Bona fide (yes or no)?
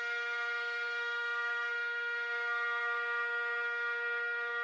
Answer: no